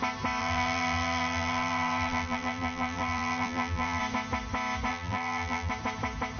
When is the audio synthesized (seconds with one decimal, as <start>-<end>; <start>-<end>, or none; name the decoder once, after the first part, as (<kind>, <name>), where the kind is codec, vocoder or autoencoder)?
0.4-4.0 (vocoder, BigVGAN v2); 4.9-5.7